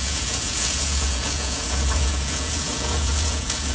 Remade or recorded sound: remade